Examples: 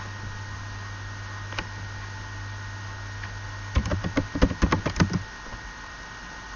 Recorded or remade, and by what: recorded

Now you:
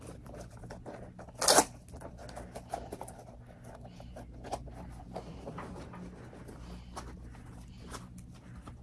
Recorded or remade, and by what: recorded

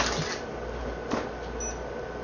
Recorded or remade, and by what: recorded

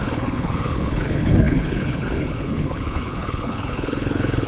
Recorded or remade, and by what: remade, codec, HILCodec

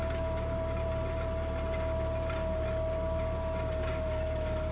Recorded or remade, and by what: recorded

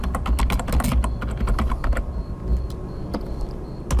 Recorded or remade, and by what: recorded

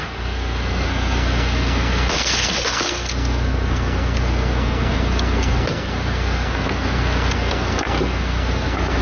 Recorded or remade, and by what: remade, codec, SNAC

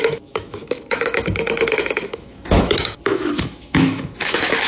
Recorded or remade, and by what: remade, autoencoder, DAC-VAE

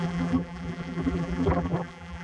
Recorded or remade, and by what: remade, vocoder, BigVGAN v2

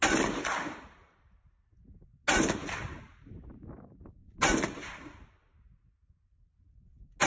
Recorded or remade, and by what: recorded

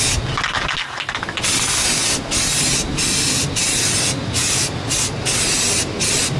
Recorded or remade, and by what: recorded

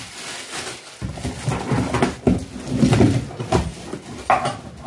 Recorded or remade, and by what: recorded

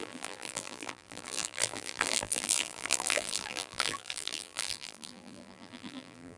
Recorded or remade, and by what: remade, vocoder, BigVGAN v2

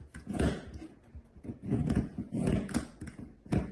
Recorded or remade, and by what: remade, vocoder, Vocos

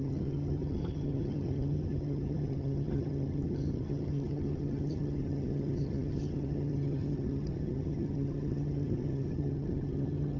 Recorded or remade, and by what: remade, vocoder, HiFi-GAN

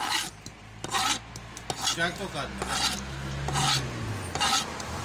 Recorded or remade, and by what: recorded